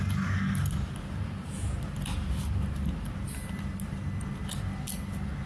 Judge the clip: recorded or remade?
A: recorded